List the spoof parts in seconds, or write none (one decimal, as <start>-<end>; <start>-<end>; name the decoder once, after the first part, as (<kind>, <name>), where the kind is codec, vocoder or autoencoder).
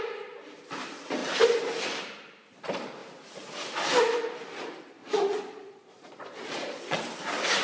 4.9-7.0 (vocoder, Vocos)